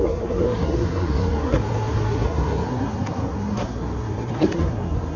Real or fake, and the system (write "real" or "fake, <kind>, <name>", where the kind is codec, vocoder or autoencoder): fake, codec, SNAC